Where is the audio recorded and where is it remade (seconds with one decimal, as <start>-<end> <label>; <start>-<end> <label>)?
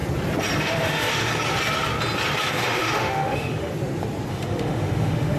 0.0-0.6 recorded; 0.6-1.3 remade; 1.3-2.5 recorded; 2.5-3.7 remade; 3.7-4.3 recorded; 4.3-5.4 remade